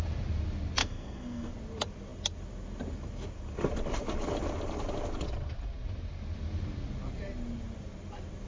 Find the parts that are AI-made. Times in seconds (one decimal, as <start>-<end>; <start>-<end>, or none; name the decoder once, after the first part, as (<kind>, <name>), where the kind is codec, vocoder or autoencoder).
0.8-1.5 (codec, SNAC)